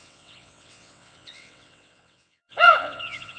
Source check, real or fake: fake